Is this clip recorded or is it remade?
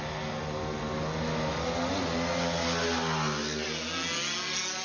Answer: recorded